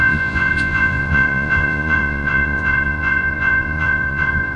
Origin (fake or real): fake